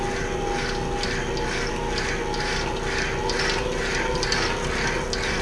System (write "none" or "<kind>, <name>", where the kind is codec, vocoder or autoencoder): none